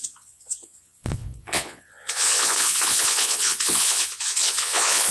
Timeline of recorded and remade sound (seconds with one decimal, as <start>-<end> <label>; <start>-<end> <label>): 0.0-5.1 remade